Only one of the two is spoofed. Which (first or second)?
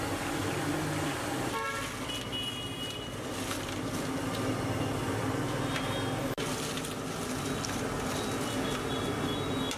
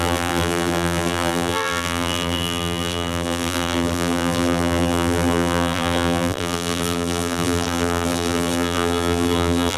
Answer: second